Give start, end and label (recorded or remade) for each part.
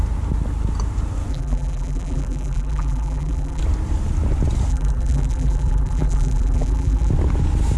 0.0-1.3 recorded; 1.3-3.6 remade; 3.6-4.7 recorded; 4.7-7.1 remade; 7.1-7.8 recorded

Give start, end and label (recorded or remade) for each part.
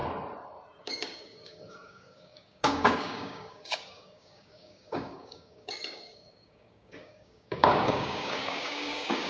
0.0-0.8 recorded; 0.8-9.3 remade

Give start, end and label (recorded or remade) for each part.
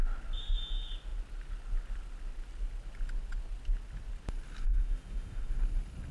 0.0-4.7 recorded; 4.7-5.5 remade; 5.5-6.1 recorded